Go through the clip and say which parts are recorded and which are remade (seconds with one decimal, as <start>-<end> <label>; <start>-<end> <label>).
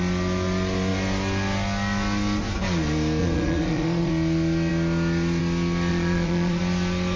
0.0-3.2 recorded; 3.2-4.1 remade; 4.1-5.9 recorded; 5.9-6.6 remade; 6.6-7.2 recorded